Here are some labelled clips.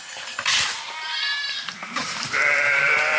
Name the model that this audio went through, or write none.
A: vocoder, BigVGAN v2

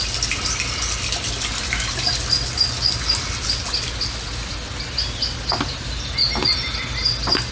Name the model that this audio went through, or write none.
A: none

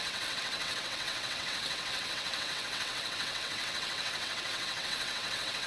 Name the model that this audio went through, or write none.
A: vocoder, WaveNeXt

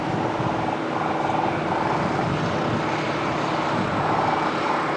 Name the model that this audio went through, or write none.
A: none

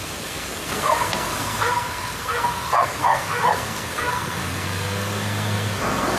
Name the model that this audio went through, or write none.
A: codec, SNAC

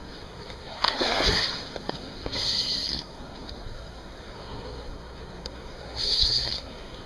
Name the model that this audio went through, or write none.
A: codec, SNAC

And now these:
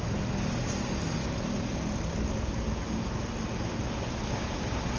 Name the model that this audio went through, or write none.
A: none